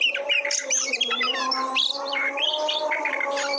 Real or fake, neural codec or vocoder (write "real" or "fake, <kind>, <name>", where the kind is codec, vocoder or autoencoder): real